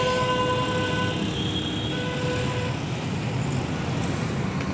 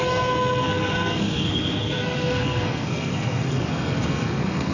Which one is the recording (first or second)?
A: first